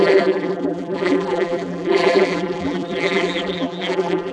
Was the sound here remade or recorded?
remade